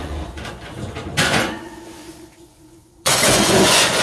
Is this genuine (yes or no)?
no